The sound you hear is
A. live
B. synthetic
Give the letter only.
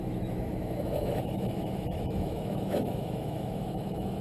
B